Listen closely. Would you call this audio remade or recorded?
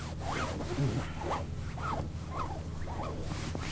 recorded